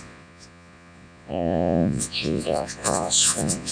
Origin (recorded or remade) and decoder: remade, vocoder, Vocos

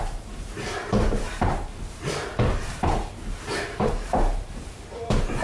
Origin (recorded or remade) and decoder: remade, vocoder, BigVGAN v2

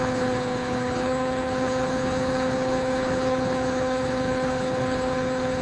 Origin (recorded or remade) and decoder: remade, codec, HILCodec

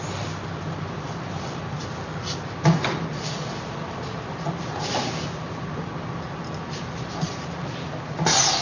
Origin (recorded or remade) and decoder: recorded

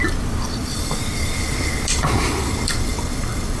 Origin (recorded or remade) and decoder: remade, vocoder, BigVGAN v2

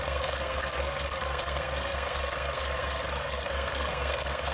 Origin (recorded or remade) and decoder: remade, codec, SNAC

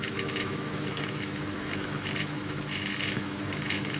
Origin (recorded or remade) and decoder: remade, autoencoder, DAC-VAE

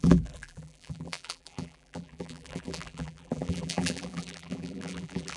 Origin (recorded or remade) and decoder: remade, vocoder, BigVGAN v2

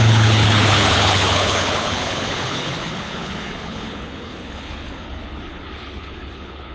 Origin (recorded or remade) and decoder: remade, codec, HILCodec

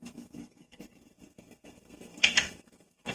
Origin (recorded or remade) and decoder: remade, codec, SNAC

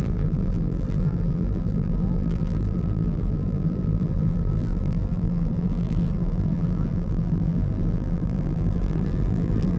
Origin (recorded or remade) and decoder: remade, vocoder, BigVGAN v2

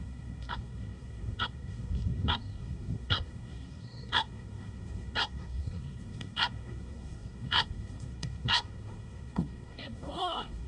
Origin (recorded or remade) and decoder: remade, codec, SNAC